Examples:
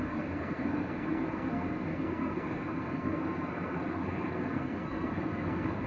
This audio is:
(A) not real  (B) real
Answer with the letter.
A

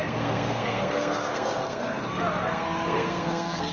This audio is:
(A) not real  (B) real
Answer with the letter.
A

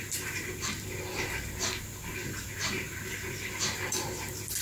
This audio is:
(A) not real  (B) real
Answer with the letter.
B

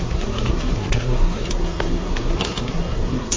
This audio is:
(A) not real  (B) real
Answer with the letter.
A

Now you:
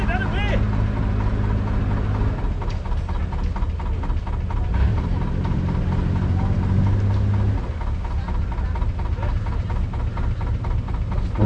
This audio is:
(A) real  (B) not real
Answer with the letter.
A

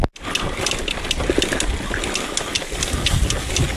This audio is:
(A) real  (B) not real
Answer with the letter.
A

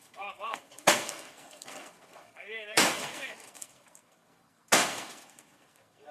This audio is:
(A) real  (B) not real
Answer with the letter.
B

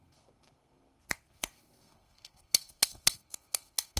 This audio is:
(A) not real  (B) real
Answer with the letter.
A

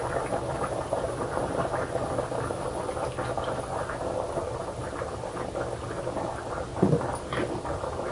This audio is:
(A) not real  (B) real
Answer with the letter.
B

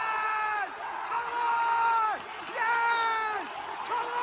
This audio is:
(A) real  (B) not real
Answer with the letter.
A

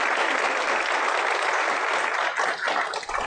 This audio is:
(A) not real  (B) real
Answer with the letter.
B